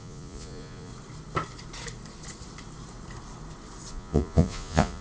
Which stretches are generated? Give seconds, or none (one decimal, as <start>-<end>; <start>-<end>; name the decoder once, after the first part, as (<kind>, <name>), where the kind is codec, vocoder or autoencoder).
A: 0.0-0.9 (vocoder, Vocos); 3.9-5.0